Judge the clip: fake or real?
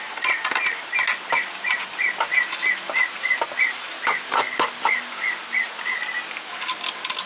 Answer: real